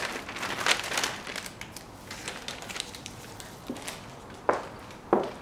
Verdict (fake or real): real